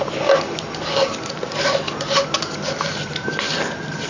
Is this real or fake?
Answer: real